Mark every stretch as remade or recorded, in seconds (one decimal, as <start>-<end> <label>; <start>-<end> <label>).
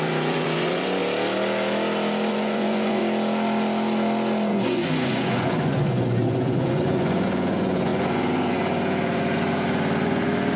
0.0-1.0 remade; 1.0-2.3 recorded; 2.3-3.0 remade; 3.0-4.5 recorded; 4.5-10.6 remade